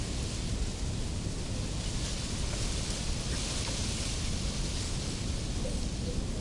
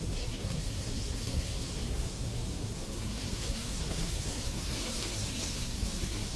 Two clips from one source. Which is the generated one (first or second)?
second